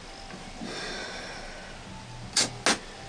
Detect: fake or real real